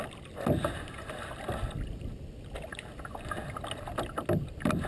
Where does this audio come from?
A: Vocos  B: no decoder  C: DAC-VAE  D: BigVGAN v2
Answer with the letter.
B